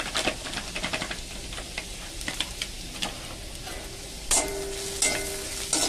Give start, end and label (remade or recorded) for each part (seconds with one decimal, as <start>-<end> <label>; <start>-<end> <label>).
0.0-5.9 recorded